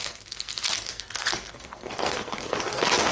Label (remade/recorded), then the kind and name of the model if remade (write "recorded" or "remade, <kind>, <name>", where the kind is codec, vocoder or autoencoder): remade, codec, SNAC